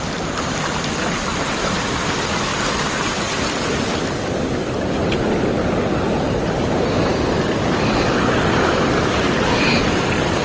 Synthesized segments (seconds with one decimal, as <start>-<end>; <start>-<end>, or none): 2.5-3.8